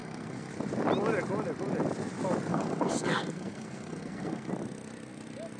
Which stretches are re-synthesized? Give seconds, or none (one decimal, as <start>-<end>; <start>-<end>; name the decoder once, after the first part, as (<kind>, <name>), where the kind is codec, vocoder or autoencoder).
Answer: 0.0-0.5 (codec, SNAC); 2.5-4.5